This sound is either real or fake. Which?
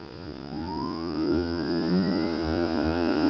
fake